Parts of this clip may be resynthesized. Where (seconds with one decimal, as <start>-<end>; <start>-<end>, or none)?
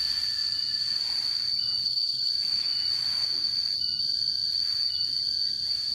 1.8-2.3